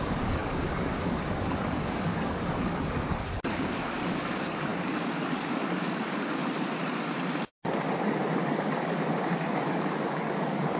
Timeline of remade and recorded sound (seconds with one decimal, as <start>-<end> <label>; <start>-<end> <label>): 0.0-6.4 remade; 6.4-8.6 recorded; 8.6-10.8 remade